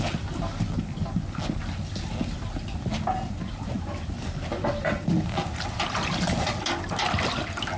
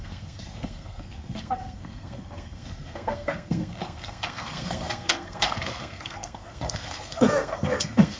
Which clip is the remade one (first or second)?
second